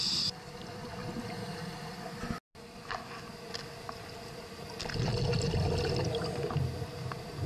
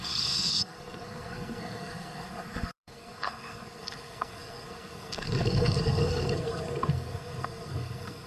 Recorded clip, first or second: first